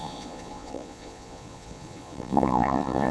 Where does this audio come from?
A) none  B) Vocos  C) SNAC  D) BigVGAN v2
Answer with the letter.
B